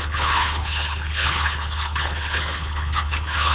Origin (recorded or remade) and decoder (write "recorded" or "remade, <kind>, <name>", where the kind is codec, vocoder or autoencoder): remade, codec, HILCodec